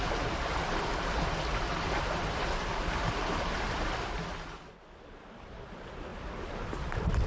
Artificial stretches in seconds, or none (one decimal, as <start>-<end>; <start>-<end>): none